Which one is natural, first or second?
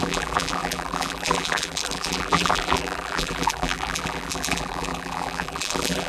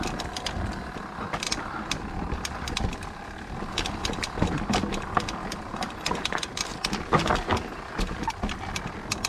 second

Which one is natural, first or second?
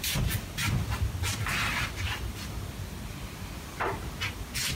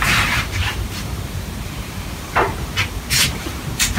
first